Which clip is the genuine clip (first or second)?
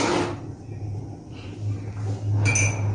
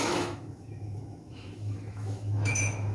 first